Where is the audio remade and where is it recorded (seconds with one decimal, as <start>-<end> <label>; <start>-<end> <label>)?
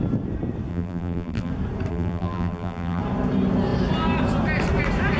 0.0-0.7 recorded; 0.7-1.5 remade; 1.5-1.9 recorded; 1.9-3.0 remade; 3.0-5.2 recorded